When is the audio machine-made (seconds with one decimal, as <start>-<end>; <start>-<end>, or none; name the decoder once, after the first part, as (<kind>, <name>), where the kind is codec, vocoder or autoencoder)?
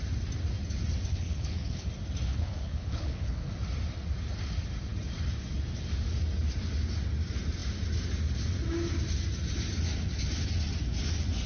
1.1-1.9 (codec, HILCodec); 2.3-3.5